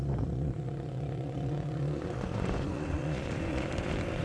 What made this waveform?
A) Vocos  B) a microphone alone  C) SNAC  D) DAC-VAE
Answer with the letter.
A